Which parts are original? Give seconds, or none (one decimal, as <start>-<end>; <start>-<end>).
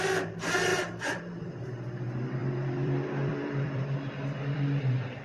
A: 0.0-0.7; 1.4-2.4; 4.8-5.2